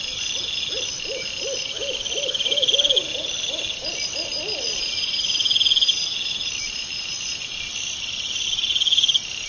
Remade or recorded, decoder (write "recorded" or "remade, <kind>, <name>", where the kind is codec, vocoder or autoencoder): recorded